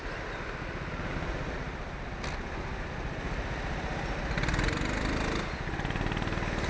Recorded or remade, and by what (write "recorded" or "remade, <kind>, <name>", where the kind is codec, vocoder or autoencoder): recorded